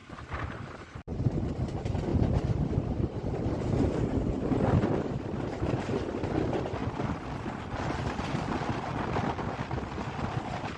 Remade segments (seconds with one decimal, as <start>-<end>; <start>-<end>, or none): 0.0-0.8